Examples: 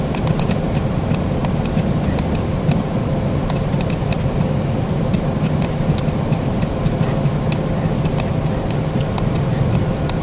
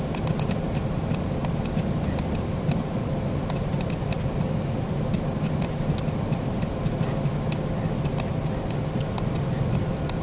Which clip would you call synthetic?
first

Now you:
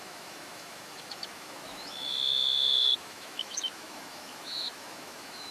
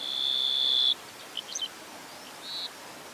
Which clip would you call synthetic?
first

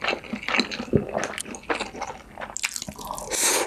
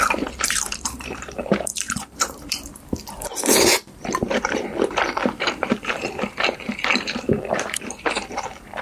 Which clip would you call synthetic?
second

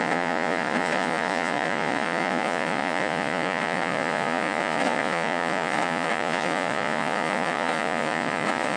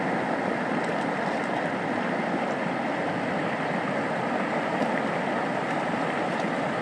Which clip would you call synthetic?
first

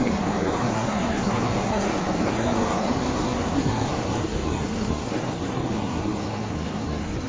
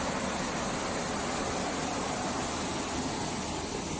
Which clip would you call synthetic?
first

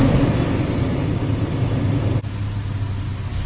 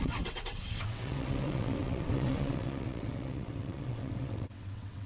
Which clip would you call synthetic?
second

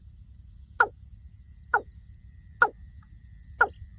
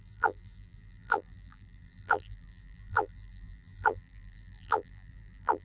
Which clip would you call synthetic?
second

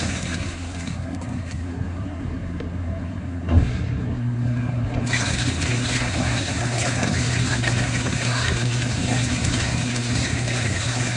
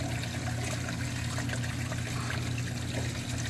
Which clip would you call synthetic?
first